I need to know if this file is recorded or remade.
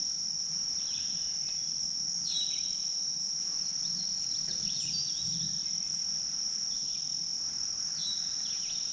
recorded